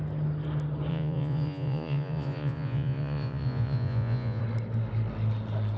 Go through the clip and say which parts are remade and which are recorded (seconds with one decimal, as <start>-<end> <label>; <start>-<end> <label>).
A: 0.0-0.9 recorded; 0.9-4.4 remade; 4.4-5.8 recorded